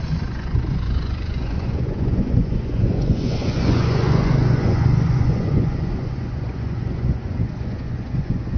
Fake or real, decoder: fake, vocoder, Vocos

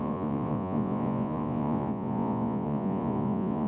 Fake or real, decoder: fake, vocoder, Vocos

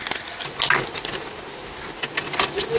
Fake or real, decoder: real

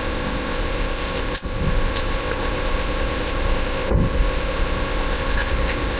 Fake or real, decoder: fake, codec, ZipCodec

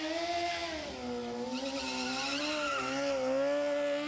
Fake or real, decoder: real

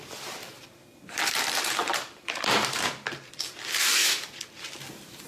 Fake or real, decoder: fake, vocoder, BigVGAN v2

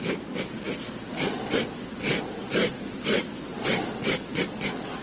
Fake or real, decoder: real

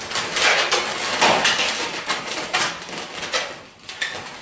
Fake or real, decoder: real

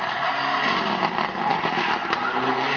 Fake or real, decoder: real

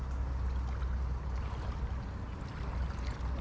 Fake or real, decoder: real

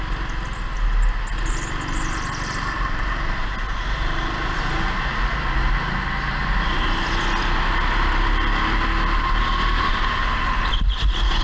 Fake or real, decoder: real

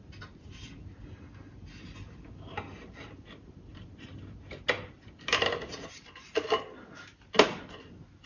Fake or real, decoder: real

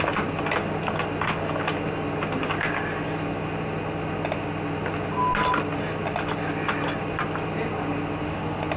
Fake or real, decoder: real